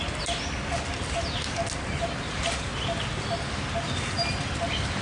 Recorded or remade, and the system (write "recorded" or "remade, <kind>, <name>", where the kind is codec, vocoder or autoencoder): recorded